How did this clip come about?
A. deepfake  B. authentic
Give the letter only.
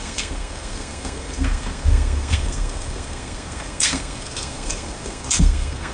A